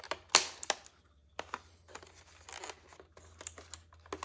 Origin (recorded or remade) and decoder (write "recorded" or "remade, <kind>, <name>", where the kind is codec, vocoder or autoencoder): recorded